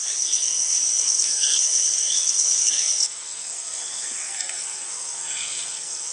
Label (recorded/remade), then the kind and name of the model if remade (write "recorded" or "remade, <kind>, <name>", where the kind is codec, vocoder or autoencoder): remade, codec, SNAC